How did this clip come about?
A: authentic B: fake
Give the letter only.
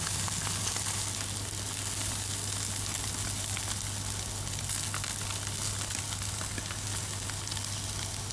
A